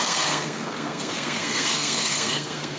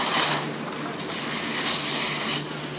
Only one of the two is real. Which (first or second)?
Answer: second